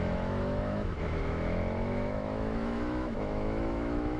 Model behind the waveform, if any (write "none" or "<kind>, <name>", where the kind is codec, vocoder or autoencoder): autoencoder, DAC-VAE